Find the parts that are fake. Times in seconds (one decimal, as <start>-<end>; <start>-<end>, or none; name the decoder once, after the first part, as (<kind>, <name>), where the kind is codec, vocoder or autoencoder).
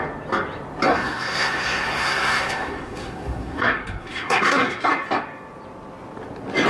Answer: 0.9-4.9 (codec, SNAC)